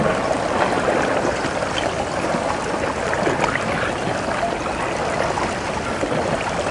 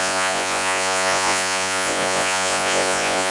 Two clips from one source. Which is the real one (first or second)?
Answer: first